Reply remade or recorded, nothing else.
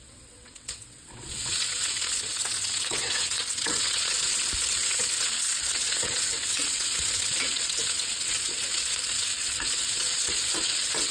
remade